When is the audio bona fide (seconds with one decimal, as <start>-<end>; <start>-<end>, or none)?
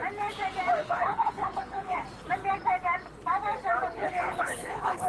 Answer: 0.0-0.8; 2.0-4.0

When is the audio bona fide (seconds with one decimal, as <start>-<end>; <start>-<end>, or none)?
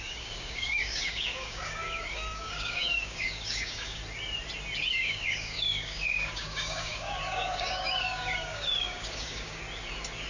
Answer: 4.0-4.9; 9.6-10.3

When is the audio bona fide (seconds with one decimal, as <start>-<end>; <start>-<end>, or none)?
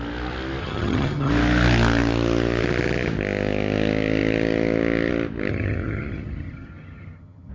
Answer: 0.0-0.6; 1.3-5.5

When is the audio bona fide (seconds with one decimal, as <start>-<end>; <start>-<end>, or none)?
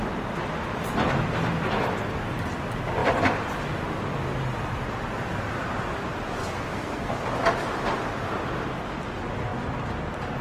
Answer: 0.0-6.4; 7.1-10.4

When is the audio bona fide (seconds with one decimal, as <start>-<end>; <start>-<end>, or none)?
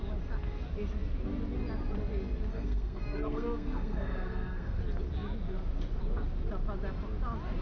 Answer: 0.0-2.5; 4.8-7.6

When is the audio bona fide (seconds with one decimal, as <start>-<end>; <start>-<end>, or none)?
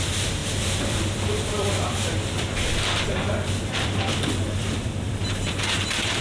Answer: none